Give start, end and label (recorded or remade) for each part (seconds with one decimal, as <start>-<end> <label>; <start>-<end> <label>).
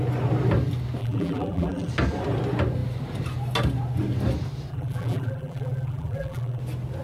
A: 0.0-1.0 recorded; 1.0-1.9 remade; 1.9-4.7 recorded; 4.7-6.6 remade; 6.6-7.0 recorded